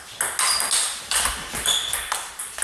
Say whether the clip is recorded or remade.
recorded